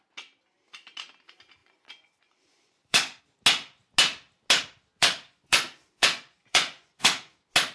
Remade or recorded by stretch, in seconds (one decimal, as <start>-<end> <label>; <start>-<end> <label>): 0.0-1.6 recorded; 1.6-3.2 remade; 3.2-5.0 recorded; 5.0-7.1 remade; 7.1-7.7 recorded